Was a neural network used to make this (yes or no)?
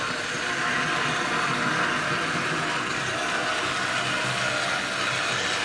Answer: no